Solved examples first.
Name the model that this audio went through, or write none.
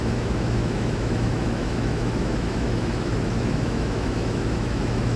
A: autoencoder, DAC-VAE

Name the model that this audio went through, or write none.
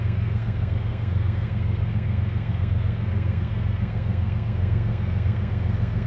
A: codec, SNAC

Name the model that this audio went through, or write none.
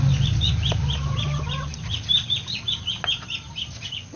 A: none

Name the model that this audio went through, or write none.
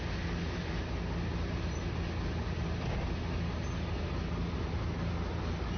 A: none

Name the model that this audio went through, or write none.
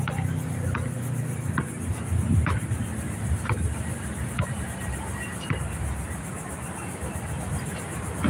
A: none